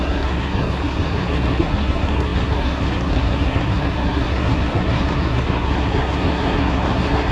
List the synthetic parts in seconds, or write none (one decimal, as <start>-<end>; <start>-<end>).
0.0-7.3

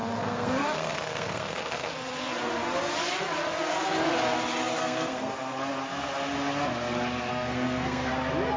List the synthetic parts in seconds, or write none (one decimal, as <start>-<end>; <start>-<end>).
0.0-1.9; 4.8-5.3; 7.3-8.1

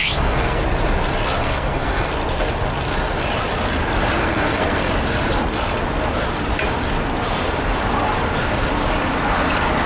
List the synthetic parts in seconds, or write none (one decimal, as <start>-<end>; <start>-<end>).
0.0-0.6; 1.4-2.1; 4.2-4.9

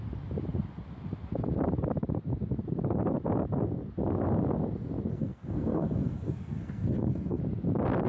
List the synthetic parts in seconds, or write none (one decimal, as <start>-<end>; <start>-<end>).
5.1-7.4

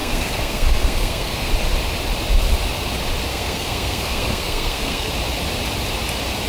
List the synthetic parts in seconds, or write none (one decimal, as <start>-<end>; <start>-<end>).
0.0-1.5; 3.3-5.1

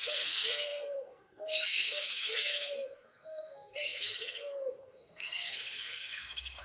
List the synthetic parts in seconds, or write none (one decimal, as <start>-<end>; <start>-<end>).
0.0-6.6

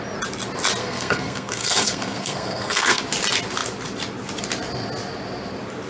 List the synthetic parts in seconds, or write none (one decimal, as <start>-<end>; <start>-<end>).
0.8-3.0

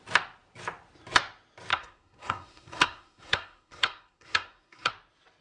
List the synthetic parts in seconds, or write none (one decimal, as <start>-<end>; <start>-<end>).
1.7-4.9